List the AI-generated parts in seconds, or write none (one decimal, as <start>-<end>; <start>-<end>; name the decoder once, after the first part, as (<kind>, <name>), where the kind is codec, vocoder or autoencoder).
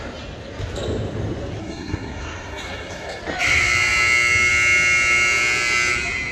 1.6-3.2 (codec, SNAC)